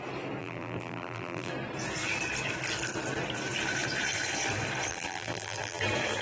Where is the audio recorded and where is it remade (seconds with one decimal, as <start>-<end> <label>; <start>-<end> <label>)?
0.0-0.4 recorded; 0.4-1.5 remade; 1.5-4.9 recorded; 4.9-5.8 remade; 5.8-6.2 recorded